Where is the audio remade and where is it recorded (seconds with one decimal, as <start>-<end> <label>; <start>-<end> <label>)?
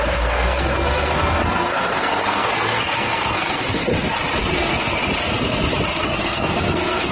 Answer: 0.0-3.9 remade; 3.9-4.4 recorded; 4.4-5.0 remade; 5.0-6.0 recorded; 6.0-7.1 remade